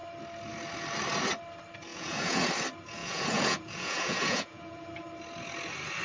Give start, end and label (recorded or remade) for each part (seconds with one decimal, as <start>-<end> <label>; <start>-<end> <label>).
0.0-1.9 recorded; 1.9-2.5 remade; 2.5-3.0 recorded; 3.0-4.9 remade; 4.9-6.0 recorded